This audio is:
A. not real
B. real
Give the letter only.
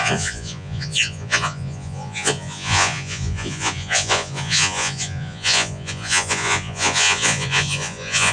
A